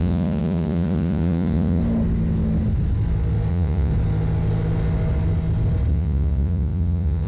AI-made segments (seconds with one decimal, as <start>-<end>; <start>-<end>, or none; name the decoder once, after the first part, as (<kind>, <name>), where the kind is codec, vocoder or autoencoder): 0.0-1.8 (vocoder, Vocos); 3.5-3.9; 5.9-7.3